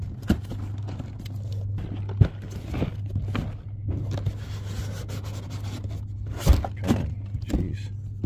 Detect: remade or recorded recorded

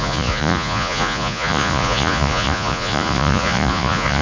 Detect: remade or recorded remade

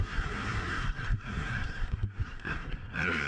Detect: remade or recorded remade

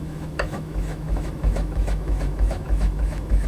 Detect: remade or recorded remade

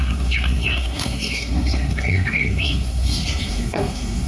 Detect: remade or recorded remade